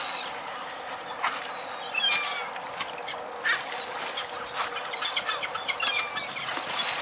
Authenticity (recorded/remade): recorded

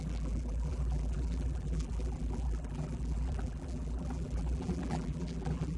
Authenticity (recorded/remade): remade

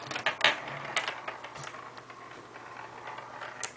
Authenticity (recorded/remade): recorded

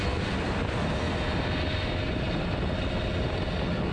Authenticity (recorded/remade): recorded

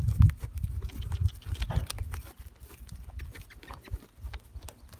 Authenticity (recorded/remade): recorded